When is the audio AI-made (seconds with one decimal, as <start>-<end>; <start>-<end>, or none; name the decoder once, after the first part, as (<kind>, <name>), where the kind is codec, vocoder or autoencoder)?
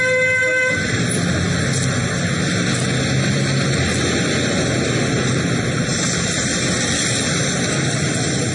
none